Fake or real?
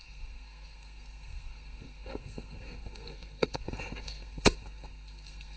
fake